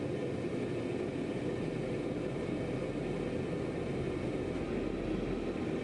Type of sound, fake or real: real